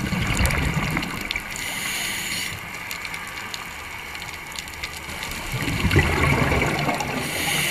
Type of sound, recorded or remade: recorded